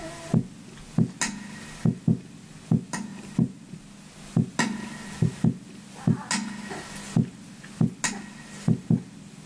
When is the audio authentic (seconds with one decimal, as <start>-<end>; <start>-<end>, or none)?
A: 0.0-3.1; 3.6-9.5